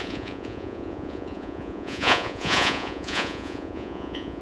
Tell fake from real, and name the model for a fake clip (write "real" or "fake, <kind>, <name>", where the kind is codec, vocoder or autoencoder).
fake, vocoder, Vocos